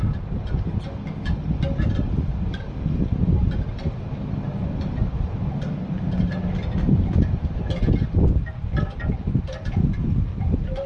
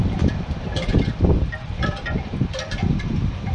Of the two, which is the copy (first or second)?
second